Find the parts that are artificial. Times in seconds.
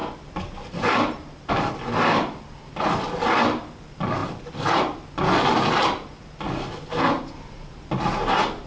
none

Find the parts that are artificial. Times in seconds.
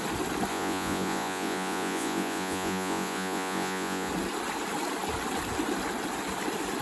0.5-4.1 (vocoder, Vocos)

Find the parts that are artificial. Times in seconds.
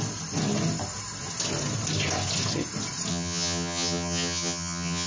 3.1-5.1 (vocoder, HiFi-GAN)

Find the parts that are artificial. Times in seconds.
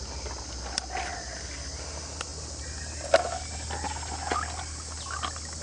none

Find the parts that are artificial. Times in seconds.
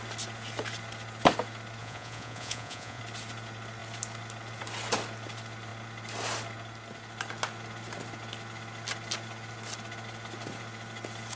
1.8-3.0 (vocoder, Vocos)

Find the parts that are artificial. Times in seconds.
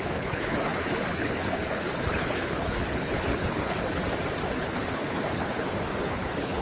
0.0-4.0 (codec, HILCodec); 4.6-6.6